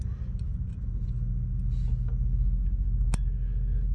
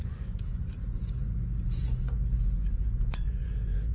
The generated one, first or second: second